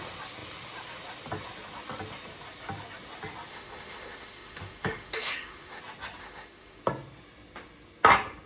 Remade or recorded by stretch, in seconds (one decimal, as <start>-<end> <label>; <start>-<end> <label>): 0.0-3.5 recorded; 3.5-5.8 remade; 5.8-6.2 recorded; 6.2-6.8 remade; 6.8-8.5 recorded